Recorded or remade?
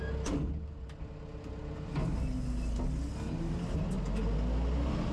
recorded